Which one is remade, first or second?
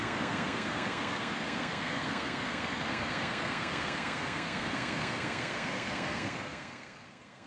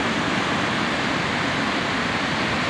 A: first